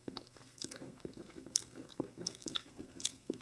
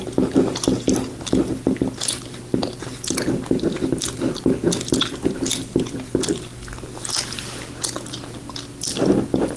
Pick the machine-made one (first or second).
first